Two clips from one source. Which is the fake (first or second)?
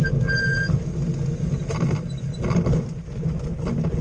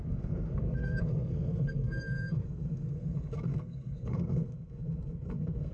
second